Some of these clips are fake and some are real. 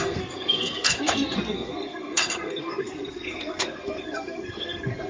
fake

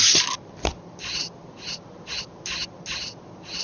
real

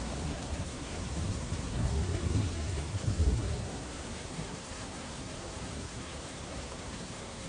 fake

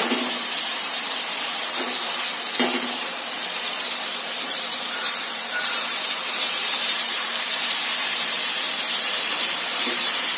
fake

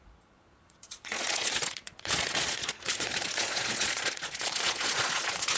fake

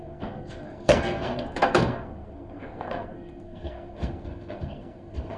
fake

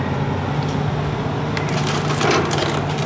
real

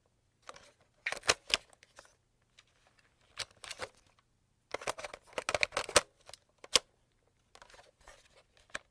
real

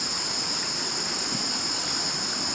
real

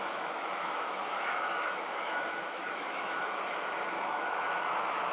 fake